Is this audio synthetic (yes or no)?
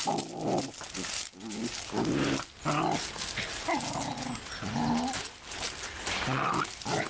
no